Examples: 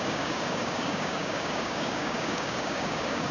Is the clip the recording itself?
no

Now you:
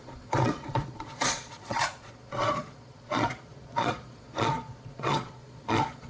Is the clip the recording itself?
no